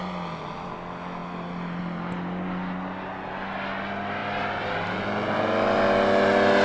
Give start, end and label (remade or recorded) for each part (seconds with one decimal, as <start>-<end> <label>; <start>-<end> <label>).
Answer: 0.0-6.6 recorded